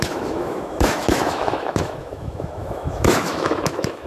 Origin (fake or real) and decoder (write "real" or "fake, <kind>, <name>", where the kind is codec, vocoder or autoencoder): fake, autoencoder, DAC-VAE